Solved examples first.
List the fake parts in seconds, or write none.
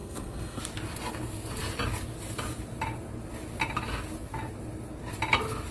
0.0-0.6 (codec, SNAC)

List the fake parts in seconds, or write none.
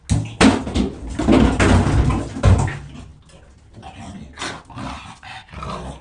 none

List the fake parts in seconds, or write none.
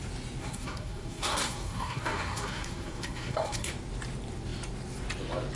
0.4-3.7 (codec, SNAC)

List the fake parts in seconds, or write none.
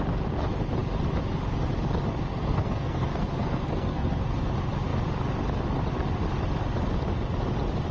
2.3-4.5 (codec, SNAC)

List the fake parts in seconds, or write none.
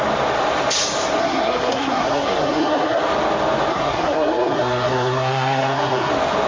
1.2-3.0 (codec, SNAC); 3.7-6.1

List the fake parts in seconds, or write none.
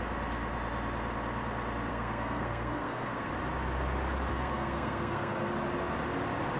1.9-3.3 (codec, SNAC); 4.3-5.5